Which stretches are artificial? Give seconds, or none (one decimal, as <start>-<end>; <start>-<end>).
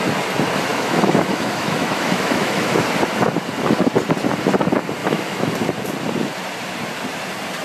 0.7-2.8; 5.0-5.5